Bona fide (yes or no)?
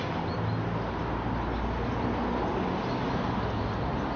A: yes